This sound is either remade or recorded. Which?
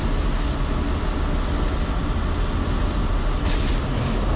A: recorded